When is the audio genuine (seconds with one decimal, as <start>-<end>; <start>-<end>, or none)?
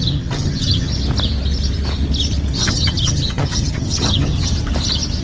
0.9-2.5; 4.5-5.2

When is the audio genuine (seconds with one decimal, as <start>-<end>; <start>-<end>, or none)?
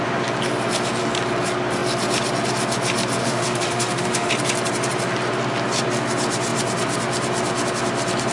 0.0-3.2; 4.3-8.3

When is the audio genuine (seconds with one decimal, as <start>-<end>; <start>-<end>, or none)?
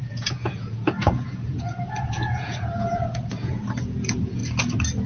4.4-5.1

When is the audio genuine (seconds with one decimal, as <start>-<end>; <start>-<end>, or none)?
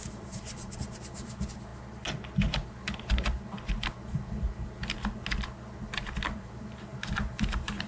1.7-6.4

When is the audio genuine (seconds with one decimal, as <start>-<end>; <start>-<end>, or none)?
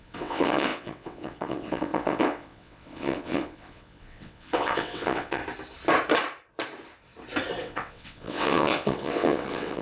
5.4-7.6